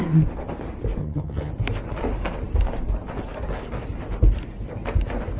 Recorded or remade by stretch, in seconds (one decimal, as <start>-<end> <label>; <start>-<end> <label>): 0.0-1.0 recorded; 1.0-1.5 remade; 1.5-5.4 recorded